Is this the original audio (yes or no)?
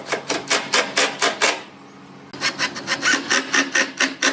yes